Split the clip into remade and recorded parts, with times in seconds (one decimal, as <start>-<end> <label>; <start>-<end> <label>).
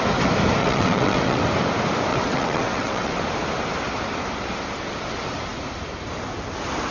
0.0-0.6 recorded; 0.6-1.4 remade; 1.4-2.1 recorded; 2.1-3.2 remade; 3.2-6.9 recorded